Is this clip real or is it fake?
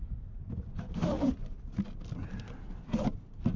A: real